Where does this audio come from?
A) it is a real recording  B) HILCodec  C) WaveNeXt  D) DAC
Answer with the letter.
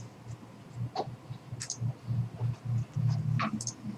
A